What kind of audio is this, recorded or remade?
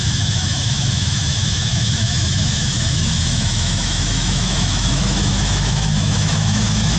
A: remade